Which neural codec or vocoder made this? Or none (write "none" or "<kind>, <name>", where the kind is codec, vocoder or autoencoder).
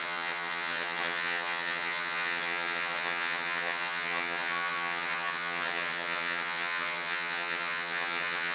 vocoder, HiFi-GAN